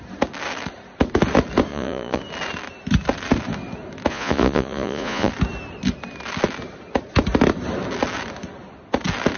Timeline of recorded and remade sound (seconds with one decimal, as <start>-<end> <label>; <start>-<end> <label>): 0.0-1.7 recorded; 1.7-2.2 remade; 2.2-4.1 recorded; 4.1-5.3 remade; 5.3-9.4 recorded